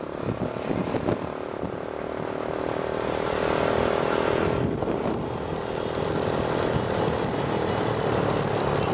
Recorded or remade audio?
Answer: recorded